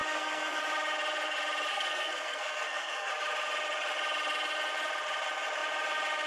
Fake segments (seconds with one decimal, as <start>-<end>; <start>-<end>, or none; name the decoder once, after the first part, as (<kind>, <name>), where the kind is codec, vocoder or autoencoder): 0.0-0.6 (codec, SNAC); 1.7-3.1